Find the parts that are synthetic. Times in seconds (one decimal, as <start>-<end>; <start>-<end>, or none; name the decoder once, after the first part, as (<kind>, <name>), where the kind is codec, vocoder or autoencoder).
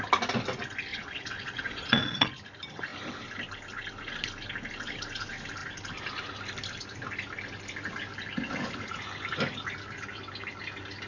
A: 0.9-2.3 (vocoder, Vocos)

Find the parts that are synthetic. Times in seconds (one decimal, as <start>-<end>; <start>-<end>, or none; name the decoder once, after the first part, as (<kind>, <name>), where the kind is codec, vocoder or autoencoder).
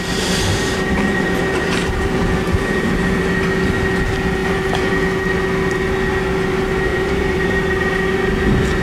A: 0.5-3.2 (vocoder, BigVGAN v2); 4.4-4.9; 6.9-7.6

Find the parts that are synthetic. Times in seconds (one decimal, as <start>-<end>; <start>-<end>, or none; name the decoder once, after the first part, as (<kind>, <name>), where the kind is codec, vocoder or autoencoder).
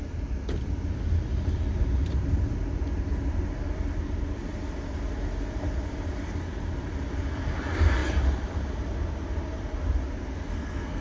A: 10.5-11.0 (codec, SNAC)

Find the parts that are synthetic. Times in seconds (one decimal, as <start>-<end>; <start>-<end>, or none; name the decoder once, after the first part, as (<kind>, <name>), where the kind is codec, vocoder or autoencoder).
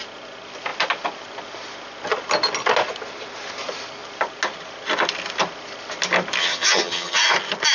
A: 6.4-7.2 (vocoder, HiFi-GAN)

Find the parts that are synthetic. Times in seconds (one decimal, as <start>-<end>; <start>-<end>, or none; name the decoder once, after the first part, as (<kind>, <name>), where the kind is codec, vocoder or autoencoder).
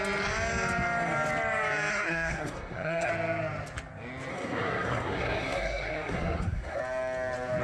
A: 1.9-3.1 (codec, SNAC); 4.3-6.8